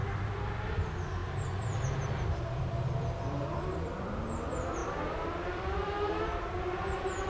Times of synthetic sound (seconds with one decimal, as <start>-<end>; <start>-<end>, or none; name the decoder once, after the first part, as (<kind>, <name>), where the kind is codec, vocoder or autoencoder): 0.0-7.3 (vocoder, BigVGAN v2)